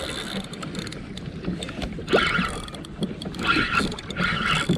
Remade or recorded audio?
recorded